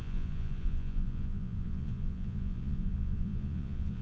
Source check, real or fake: fake